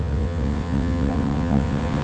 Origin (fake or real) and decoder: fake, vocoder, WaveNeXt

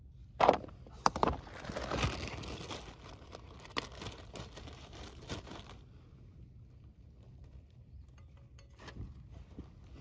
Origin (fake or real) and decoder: real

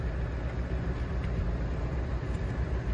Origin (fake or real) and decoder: real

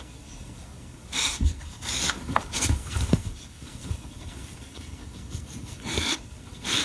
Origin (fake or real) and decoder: fake, codec, SNAC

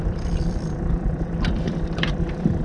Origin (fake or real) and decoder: fake, vocoder, BigVGAN v2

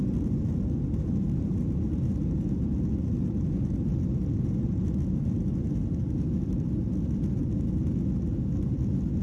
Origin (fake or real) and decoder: real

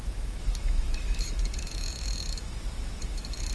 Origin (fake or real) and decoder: fake, autoencoder, DAC-VAE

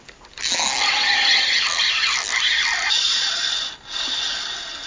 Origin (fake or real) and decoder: real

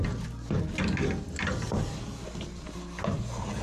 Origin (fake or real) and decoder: real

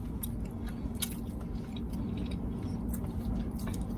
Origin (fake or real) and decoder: real